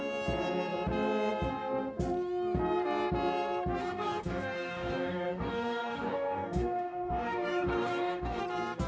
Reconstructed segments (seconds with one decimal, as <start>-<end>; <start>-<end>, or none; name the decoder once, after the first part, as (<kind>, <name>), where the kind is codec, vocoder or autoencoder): 3.8-8.4 (codec, DAC)